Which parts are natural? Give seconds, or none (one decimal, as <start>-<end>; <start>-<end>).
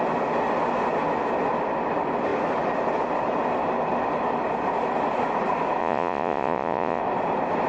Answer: 0.0-5.8; 7.0-7.7